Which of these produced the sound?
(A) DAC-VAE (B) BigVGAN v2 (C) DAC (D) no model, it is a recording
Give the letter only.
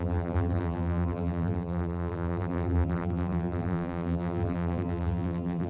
B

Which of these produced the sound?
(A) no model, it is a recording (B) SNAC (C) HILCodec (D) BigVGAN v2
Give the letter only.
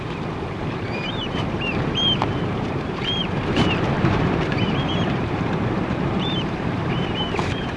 D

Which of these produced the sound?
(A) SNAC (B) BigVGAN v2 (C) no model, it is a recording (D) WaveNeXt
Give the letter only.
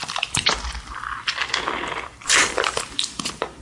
B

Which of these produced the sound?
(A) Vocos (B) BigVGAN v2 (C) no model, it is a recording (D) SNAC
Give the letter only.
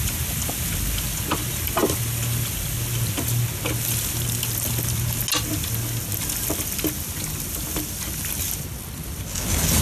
C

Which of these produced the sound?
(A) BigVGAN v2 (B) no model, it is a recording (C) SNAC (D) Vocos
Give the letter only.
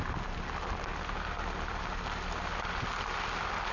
B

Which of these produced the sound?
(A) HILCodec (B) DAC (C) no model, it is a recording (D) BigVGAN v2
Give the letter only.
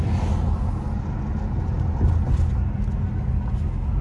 C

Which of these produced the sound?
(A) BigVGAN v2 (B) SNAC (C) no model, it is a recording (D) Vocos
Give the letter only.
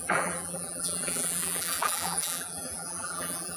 A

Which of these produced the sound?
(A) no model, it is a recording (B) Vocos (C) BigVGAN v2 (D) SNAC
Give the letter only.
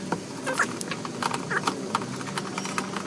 A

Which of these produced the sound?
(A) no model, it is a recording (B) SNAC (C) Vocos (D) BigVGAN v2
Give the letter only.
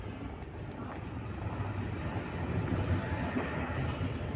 D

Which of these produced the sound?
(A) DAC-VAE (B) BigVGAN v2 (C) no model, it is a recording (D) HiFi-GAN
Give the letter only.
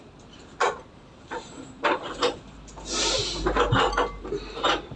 B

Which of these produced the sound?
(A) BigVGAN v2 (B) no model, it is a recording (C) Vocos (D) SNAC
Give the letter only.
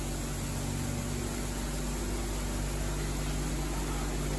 B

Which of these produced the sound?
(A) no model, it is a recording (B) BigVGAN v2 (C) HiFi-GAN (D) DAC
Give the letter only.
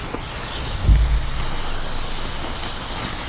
A